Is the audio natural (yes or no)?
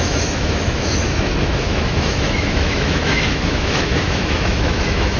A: no